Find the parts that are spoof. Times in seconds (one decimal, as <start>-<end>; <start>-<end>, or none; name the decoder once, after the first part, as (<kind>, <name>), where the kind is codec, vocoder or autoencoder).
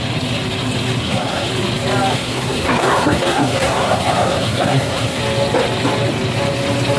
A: 1.0-1.5 (codec, SNAC); 2.1-5.2